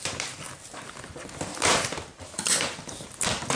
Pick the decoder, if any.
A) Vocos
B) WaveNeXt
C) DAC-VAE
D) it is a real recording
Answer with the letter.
D